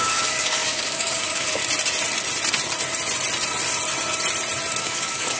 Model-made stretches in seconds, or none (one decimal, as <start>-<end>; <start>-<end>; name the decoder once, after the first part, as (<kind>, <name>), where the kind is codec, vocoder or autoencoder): 0.0-1.6 (codec, DAC); 4.8-5.4